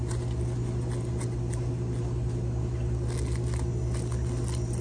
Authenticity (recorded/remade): recorded